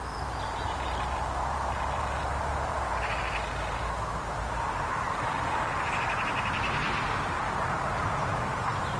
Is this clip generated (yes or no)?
yes